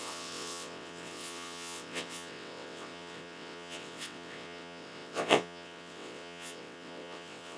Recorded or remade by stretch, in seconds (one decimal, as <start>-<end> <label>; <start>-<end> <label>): 0.0-7.6 remade